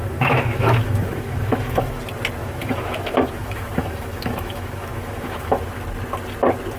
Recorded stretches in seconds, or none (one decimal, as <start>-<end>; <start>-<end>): 2.0-2.4; 5.7-6.8